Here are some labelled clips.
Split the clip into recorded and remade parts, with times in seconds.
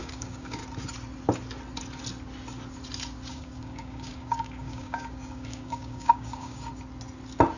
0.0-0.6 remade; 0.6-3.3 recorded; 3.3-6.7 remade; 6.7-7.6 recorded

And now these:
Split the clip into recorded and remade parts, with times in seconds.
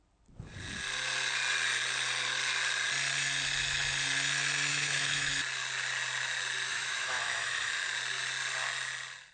0.0-4.7 recorded; 4.7-5.3 remade; 5.3-6.7 recorded; 6.7-7.7 remade; 7.7-9.3 recorded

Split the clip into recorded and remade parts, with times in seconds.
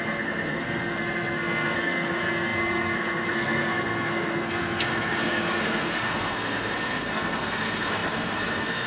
0.0-8.9 remade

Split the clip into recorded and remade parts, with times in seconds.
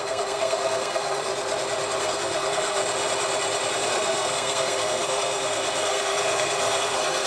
0.0-1.3 remade; 1.3-2.0 recorded; 2.0-2.8 remade; 2.8-3.7 recorded; 3.7-7.3 remade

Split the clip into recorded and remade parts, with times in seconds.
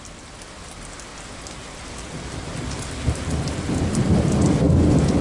0.0-5.2 recorded